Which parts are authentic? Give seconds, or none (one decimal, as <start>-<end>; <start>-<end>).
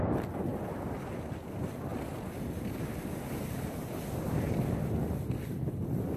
0.0-6.2